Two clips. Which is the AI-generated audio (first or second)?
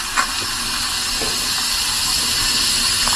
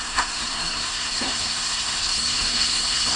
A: second